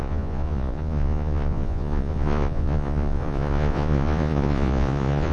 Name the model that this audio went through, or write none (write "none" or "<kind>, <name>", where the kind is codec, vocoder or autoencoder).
vocoder, Vocos